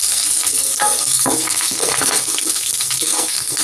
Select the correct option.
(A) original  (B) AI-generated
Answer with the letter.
B